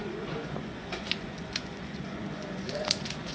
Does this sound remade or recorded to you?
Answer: remade